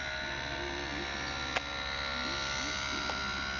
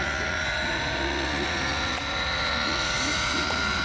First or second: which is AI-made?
second